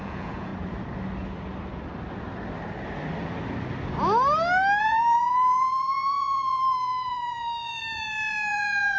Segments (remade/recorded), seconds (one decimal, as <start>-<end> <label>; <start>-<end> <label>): 0.0-0.5 remade; 0.5-4.8 recorded; 4.8-9.0 remade